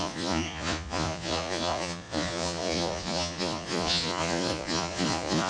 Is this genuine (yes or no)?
no